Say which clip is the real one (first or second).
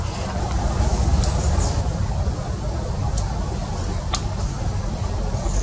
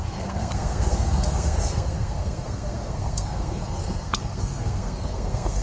first